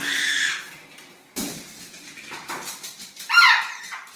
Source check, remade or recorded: remade